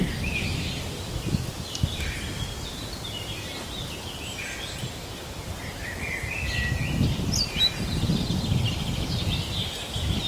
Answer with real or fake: real